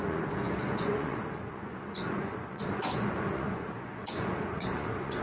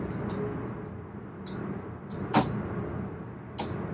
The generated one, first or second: first